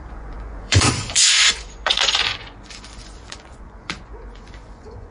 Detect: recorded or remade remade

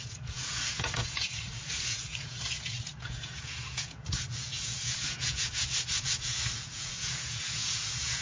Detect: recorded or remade remade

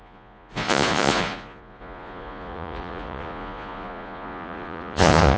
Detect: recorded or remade remade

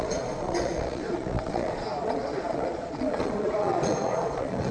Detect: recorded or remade remade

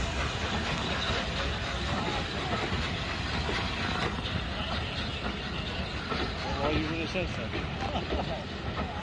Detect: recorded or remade recorded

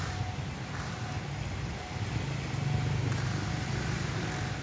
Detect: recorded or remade recorded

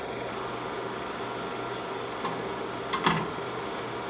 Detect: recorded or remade recorded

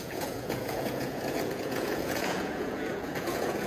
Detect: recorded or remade remade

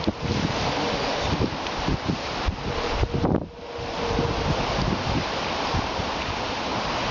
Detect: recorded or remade recorded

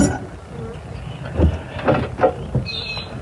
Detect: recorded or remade recorded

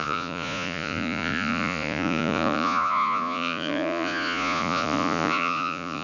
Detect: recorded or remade remade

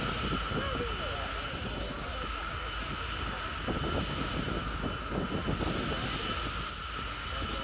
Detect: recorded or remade recorded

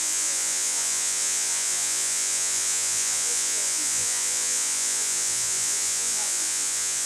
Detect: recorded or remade remade